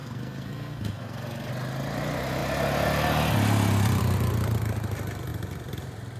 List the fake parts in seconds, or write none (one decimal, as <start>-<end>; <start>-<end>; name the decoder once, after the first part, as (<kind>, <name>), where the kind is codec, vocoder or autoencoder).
0.0-1.5 (codec, SNAC)